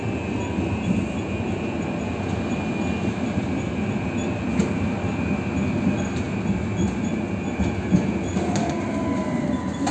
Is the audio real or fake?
real